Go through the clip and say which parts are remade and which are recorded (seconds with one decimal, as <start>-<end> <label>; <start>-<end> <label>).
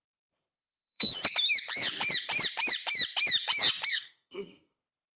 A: 0.0-1.1 remade; 1.1-3.9 recorded; 3.9-5.2 remade